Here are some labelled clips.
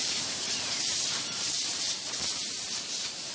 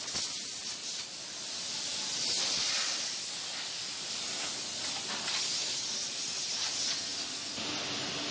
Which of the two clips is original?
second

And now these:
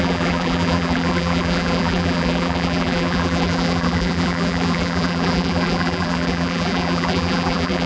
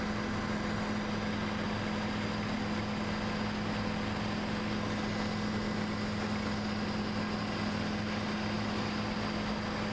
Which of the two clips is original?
second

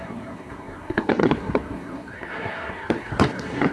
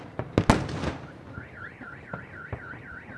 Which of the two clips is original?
second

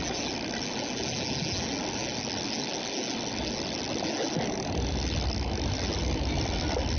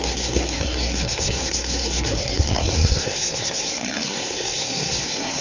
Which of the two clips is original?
first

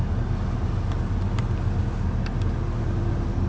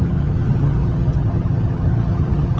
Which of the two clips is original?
first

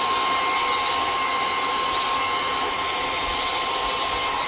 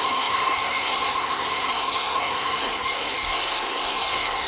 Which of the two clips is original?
first